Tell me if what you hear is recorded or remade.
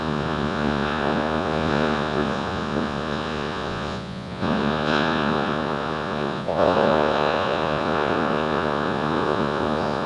remade